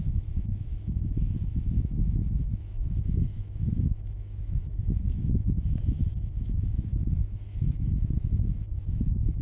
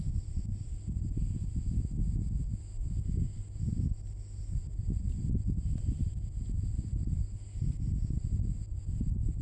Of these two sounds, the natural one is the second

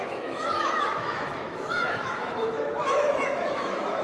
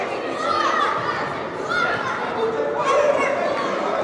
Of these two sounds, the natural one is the second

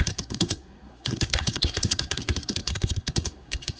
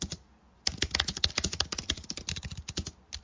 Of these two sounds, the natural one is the second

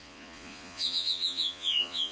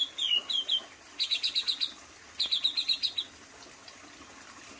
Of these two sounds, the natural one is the second